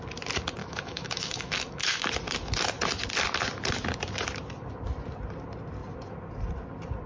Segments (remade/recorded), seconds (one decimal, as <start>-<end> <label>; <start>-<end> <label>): 0.0-0.6 recorded; 0.6-2.0 remade; 2.0-7.1 recorded